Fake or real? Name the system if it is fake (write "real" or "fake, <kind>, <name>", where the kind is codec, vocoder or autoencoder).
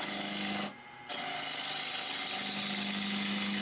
real